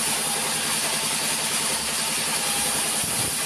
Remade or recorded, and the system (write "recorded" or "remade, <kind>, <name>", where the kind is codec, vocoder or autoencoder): recorded